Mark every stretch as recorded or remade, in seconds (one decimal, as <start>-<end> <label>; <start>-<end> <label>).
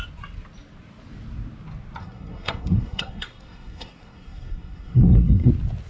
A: 0.0-2.0 recorded; 2.0-5.5 remade; 5.5-5.9 recorded